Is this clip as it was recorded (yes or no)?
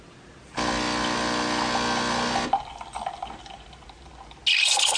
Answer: yes